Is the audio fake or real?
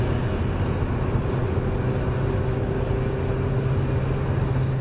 real